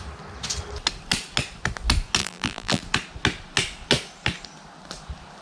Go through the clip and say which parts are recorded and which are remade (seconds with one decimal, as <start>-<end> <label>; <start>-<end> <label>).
0.0-2.2 recorded; 2.2-2.8 remade; 2.8-5.4 recorded